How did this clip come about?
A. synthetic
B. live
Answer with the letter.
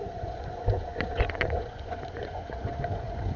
A